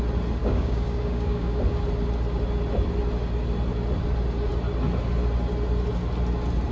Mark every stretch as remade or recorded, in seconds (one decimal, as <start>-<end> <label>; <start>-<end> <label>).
0.0-0.4 recorded; 0.4-1.6 remade; 1.6-6.7 recorded